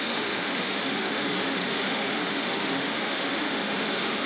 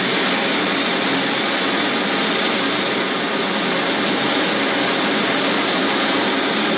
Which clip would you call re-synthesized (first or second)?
first